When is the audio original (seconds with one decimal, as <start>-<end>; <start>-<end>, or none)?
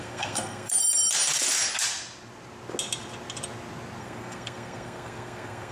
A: 0.8-4.0